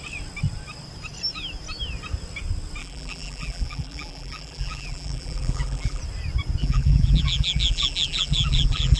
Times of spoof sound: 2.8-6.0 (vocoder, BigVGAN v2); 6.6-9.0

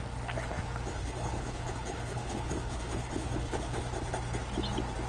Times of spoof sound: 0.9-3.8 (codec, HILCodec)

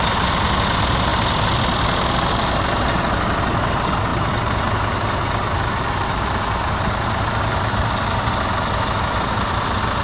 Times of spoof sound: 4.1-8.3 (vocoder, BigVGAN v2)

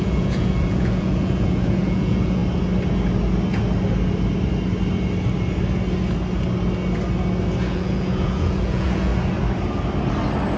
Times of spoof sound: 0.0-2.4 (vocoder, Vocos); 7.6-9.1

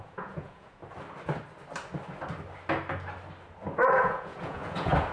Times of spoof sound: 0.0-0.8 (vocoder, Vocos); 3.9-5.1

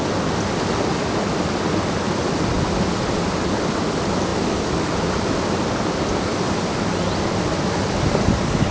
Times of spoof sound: none

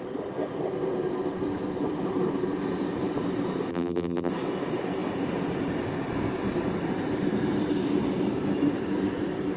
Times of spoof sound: 3.7-4.3 (vocoder, BigVGAN v2)

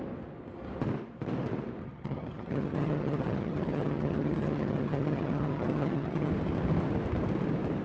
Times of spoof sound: 1.8-6.3 (vocoder, HiFi-GAN)